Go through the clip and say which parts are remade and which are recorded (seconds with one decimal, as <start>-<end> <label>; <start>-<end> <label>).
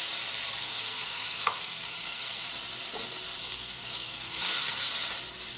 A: 0.0-0.6 recorded; 0.6-2.5 remade; 2.5-3.4 recorded; 3.4-4.9 remade; 4.9-5.6 recorded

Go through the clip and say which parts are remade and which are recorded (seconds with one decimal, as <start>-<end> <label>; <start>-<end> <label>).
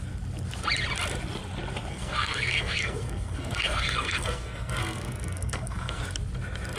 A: 0.0-1.9 recorded; 1.9-6.0 remade; 6.0-6.8 recorded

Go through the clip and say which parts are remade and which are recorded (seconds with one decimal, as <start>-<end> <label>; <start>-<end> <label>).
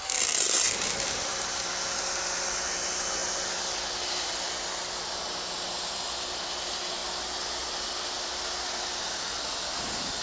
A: 0.0-10.2 recorded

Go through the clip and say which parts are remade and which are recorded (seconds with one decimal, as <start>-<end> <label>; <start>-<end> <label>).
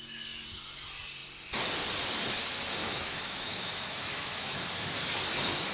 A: 0.0-2.8 recorded; 2.8-4.8 remade; 4.8-5.7 recorded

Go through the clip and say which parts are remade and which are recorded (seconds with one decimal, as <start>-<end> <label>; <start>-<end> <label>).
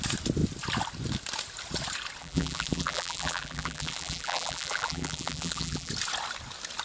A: 0.0-2.2 recorded; 2.2-5.9 remade; 5.9-6.8 recorded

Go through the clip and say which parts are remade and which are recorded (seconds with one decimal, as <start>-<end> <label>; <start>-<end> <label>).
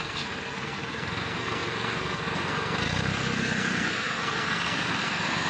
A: 0.0-5.5 remade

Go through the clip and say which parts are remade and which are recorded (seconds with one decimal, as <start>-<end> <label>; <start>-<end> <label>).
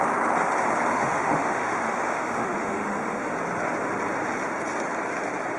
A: 0.0-0.9 recorded; 0.9-3.3 remade; 3.3-5.6 recorded